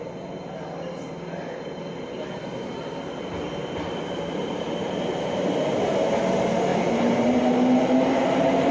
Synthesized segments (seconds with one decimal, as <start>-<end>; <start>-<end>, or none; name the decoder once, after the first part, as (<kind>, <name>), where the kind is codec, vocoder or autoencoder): 4.4-6.2 (vocoder, BigVGAN v2); 6.7-7.4